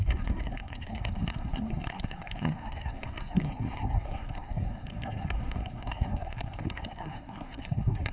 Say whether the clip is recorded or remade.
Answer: remade